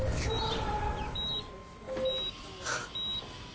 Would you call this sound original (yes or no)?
yes